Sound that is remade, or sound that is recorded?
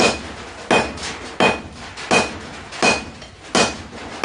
recorded